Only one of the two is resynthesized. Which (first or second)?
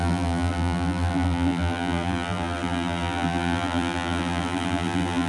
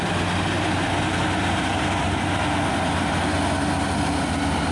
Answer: first